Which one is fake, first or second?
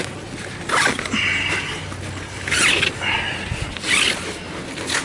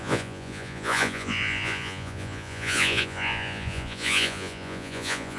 second